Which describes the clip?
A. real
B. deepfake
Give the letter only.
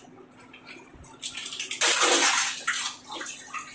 A